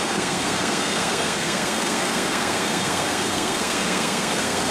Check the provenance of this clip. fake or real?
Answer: fake